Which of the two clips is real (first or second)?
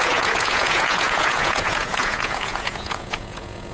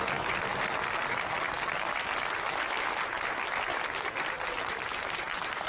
second